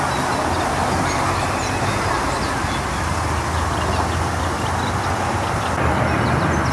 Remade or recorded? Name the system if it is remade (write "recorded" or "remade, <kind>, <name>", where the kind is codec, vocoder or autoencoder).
recorded